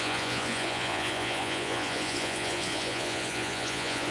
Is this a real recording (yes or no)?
no